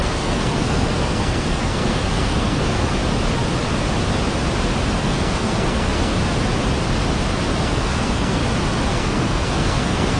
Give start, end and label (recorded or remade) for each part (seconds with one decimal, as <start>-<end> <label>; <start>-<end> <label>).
0.0-3.0 remade; 3.0-5.0 recorded; 5.0-6.1 remade; 6.1-7.6 recorded; 7.6-8.4 remade; 8.4-8.9 recorded; 8.9-10.2 remade